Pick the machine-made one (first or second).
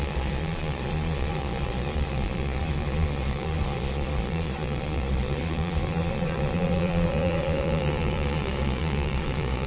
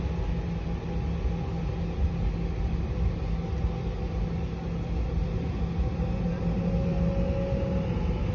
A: first